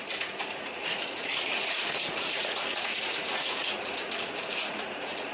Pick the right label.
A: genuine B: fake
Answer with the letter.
B